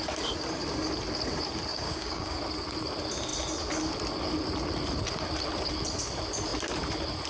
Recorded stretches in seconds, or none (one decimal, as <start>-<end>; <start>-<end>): 0.0-1.7; 2.4-7.3